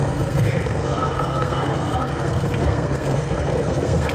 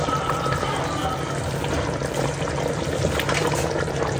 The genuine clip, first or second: second